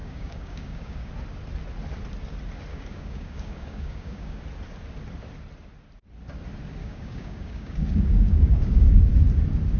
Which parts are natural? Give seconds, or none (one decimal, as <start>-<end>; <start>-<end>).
1.1-2.7; 4.4-6.8; 9.1-9.8